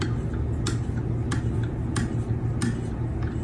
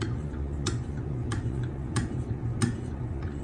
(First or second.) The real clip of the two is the first